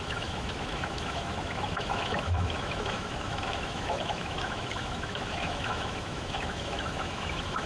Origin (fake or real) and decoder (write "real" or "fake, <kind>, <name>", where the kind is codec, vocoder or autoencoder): fake, autoencoder, DAC-VAE